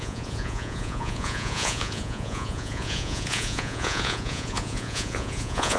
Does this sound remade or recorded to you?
remade